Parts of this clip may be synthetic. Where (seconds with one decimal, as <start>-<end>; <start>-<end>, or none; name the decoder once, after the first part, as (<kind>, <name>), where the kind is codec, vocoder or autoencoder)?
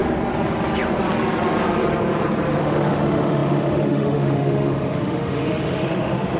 2.6-6.4 (autoencoder, DAC-VAE)